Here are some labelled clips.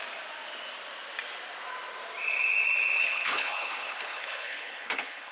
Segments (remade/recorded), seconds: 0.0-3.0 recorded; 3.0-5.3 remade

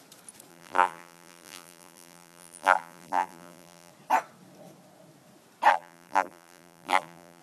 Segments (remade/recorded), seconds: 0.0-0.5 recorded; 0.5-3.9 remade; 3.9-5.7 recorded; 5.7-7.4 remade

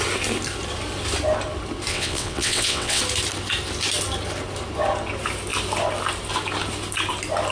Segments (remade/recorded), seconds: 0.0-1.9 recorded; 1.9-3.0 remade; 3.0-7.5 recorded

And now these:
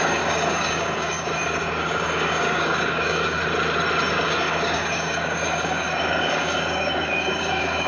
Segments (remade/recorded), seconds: 0.0-3.4 remade; 3.4-4.1 recorded; 4.1-7.9 remade

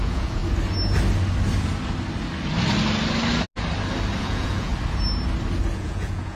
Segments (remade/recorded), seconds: 0.0-0.4 remade; 0.4-4.2 recorded; 4.2-4.7 remade; 4.7-5.8 recorded; 5.8-6.3 remade

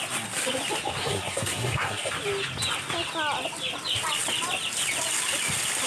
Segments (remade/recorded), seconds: 0.0-1.0 recorded; 1.0-2.1 remade; 2.1-5.9 recorded

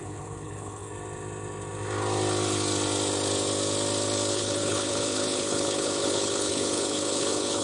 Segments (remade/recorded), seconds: 0.0-0.9 remade; 0.9-4.3 recorded; 4.3-7.6 remade

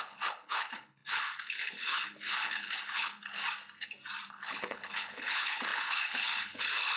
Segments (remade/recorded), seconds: 0.0-3.4 remade; 3.4-4.3 recorded; 4.3-7.0 remade